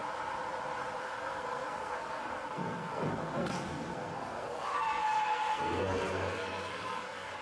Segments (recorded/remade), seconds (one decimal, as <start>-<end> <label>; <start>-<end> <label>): 0.0-1.0 recorded; 1.0-7.4 remade

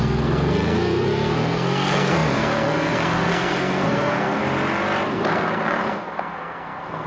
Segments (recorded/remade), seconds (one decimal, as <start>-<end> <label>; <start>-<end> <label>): 0.0-4.4 remade; 4.4-5.1 recorded; 5.1-7.1 remade

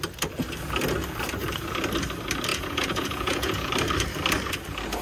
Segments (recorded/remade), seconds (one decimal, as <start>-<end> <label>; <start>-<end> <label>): 0.0-2.5 recorded; 2.5-3.7 remade; 3.7-5.0 recorded